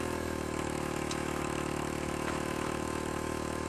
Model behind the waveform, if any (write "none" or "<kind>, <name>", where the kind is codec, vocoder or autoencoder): autoencoder, DAC-VAE